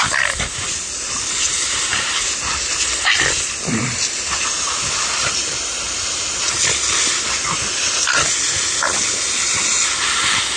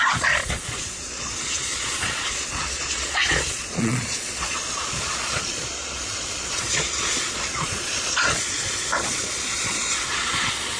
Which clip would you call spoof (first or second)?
second